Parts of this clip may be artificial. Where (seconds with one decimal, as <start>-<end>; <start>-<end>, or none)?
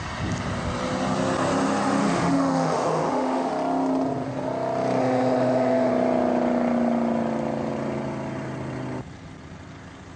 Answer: 2.0-3.5; 5.0-5.9